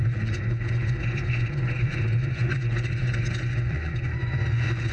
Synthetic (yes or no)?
yes